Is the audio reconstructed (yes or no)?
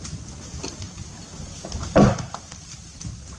no